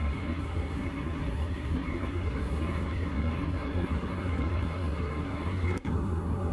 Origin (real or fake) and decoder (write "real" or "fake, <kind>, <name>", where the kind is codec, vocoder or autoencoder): fake, codec, SNAC